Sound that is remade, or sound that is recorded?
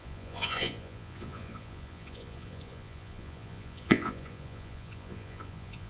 remade